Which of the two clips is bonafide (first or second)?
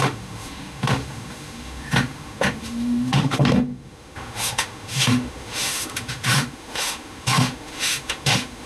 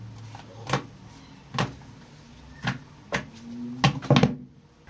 second